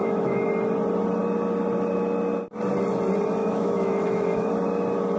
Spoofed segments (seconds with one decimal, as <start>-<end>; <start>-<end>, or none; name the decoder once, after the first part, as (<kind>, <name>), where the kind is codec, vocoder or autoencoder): 0.0-0.5 (autoencoder, DAC-VAE); 3.4-4.5